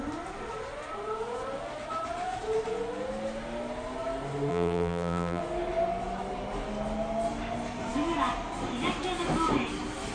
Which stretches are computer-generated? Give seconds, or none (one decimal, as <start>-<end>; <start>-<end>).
4.5-5.4